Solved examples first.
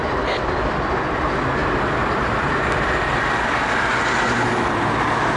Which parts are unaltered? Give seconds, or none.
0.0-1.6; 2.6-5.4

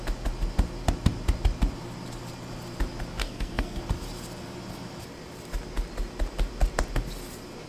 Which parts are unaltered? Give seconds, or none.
0.0-3.2; 3.8-7.7

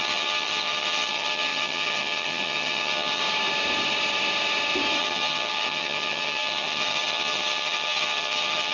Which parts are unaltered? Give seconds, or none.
3.2-5.0

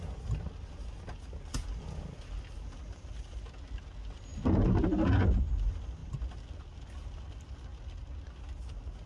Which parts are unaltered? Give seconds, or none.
0.0-9.1

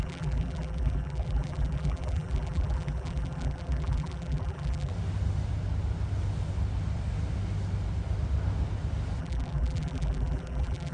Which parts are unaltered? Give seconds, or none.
4.9-9.2